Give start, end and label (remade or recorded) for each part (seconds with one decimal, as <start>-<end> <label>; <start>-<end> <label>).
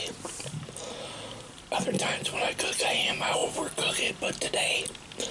0.0-5.3 recorded